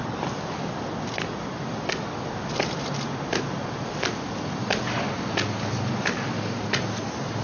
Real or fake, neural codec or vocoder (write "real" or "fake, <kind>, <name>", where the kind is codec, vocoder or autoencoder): real